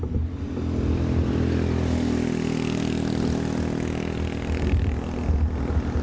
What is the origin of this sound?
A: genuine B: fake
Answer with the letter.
A